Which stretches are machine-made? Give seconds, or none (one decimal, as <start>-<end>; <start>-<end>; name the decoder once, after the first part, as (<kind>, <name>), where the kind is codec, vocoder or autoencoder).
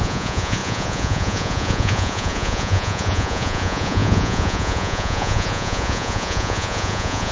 0.0-7.3 (vocoder, Vocos)